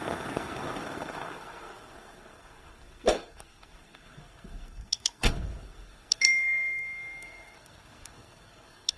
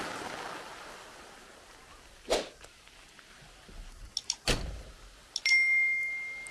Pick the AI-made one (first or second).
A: first